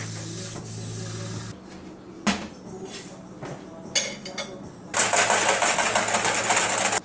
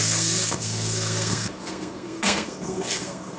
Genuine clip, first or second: first